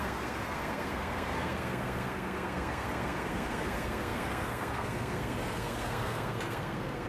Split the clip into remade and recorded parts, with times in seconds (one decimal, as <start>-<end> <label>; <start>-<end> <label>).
0.0-7.1 remade